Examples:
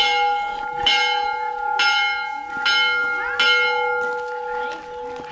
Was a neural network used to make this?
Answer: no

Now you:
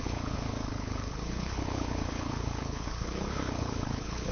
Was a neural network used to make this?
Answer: yes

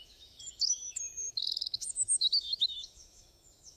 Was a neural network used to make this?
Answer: yes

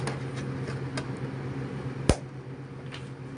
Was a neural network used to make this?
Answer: no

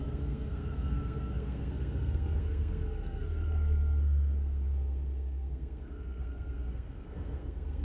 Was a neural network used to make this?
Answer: yes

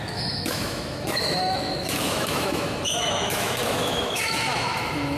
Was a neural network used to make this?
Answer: yes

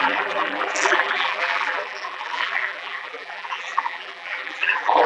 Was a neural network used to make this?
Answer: yes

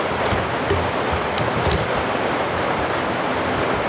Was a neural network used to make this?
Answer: no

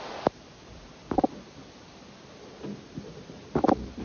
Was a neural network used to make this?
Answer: no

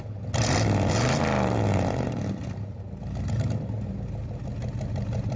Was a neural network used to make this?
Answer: no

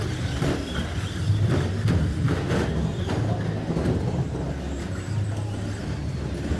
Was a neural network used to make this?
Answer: no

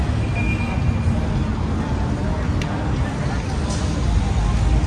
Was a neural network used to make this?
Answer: no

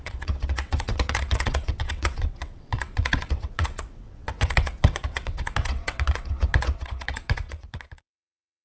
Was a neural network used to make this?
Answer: yes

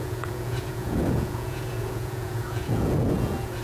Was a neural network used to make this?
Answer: yes